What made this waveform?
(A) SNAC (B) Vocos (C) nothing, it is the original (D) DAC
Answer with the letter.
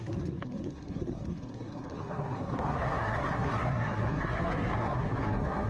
A